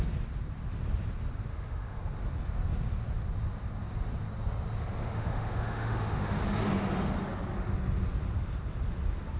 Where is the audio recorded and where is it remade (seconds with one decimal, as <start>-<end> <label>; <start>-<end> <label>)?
0.0-1.5 recorded; 1.5-2.0 remade; 2.0-5.0 recorded; 5.0-6.4 remade; 6.4-9.4 recorded